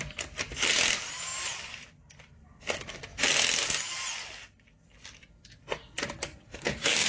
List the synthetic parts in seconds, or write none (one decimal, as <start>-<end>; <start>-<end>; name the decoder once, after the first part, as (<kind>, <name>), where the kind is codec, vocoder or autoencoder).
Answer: 6.5-7.1 (codec, DAC)